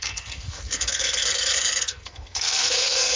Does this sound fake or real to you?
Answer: fake